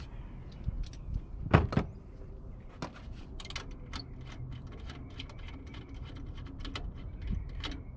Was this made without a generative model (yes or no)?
yes